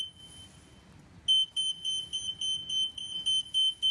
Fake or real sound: real